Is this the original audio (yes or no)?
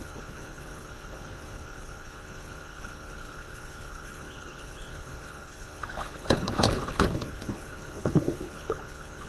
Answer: no